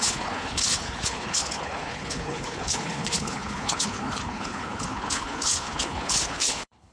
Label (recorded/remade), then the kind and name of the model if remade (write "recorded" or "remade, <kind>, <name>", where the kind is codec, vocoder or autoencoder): remade, codec, HILCodec